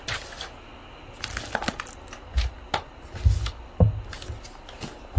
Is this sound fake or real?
real